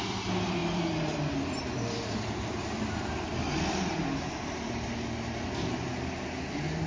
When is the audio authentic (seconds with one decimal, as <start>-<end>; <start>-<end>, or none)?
3.3-4.4